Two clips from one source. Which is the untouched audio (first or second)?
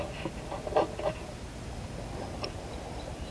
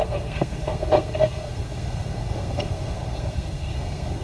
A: first